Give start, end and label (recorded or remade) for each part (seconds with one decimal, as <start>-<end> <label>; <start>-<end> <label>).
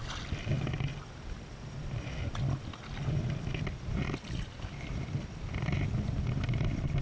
0.0-7.0 recorded